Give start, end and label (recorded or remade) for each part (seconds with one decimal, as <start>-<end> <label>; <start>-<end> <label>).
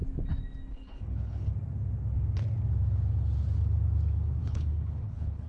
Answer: 0.0-0.7 recorded; 0.7-1.5 remade; 1.5-4.4 recorded; 4.4-5.5 remade